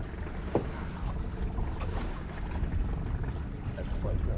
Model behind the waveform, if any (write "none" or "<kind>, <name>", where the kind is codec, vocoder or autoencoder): none